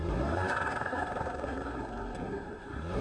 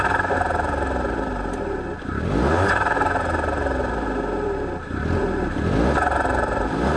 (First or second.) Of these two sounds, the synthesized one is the first